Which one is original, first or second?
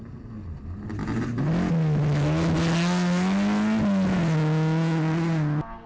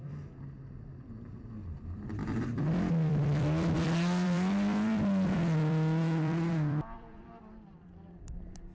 first